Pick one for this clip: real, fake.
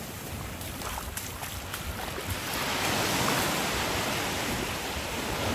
real